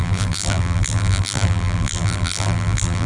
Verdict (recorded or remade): remade